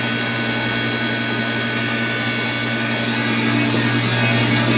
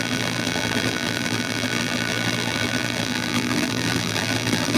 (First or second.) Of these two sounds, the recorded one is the first